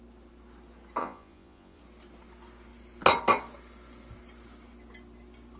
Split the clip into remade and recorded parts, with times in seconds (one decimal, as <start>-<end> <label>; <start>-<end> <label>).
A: 0.0-1.0 recorded; 1.0-1.8 remade; 1.8-5.6 recorded

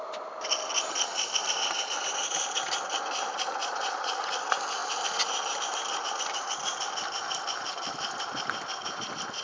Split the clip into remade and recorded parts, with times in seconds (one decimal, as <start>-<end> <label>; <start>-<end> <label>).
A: 0.0-3.6 recorded; 3.6-4.1 remade; 4.1-9.4 recorded

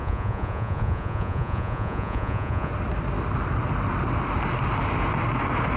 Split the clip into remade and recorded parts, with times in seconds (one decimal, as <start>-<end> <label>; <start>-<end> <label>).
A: 0.0-2.7 remade; 2.7-5.8 recorded